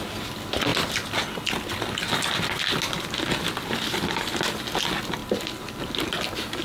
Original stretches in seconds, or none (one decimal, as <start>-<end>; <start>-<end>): 0.0-6.6